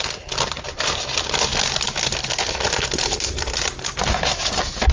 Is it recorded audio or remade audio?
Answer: recorded